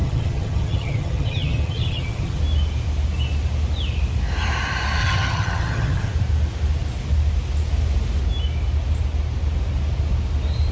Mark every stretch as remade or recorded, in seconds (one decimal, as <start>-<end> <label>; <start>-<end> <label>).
0.0-2.4 remade; 2.4-5.0 recorded; 5.0-6.1 remade; 6.1-10.7 recorded